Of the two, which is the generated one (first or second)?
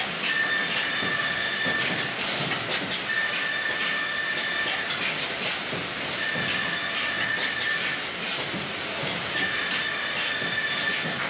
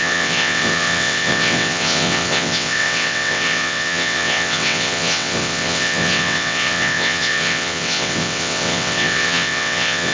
second